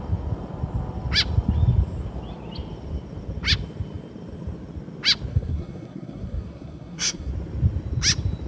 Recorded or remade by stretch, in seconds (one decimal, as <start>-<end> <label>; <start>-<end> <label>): 0.0-5.3 recorded; 5.3-7.3 remade; 7.3-8.5 recorded